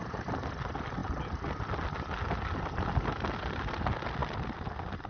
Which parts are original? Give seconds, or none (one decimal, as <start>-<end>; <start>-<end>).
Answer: 0.0-5.1